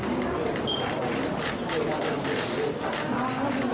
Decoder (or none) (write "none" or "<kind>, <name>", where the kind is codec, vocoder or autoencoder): none